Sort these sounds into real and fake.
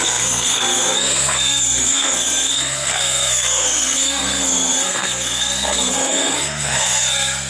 fake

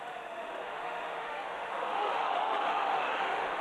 fake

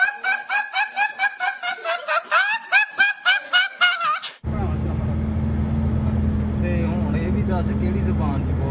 real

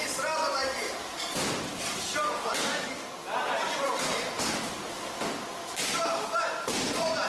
real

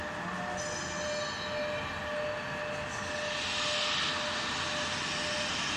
real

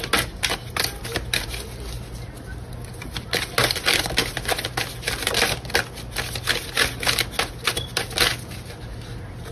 real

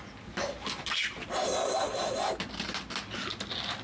real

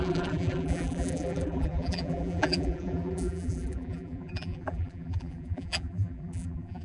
fake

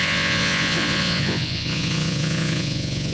fake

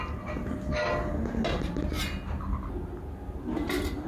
real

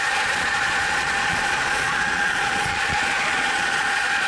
fake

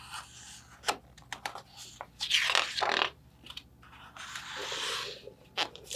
real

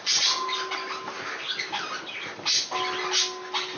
real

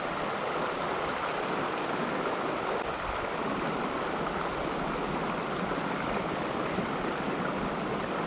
real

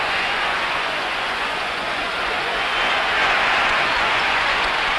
fake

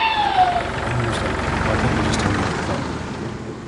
real